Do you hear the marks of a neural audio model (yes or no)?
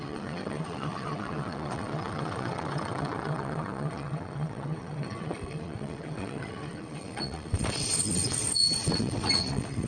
yes